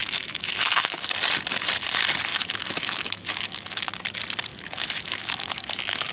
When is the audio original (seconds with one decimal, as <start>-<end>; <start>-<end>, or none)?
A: 1.0-2.3; 3.9-4.5